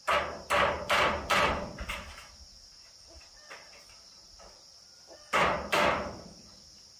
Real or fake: real